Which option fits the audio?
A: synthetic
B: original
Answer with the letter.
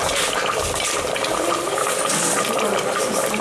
B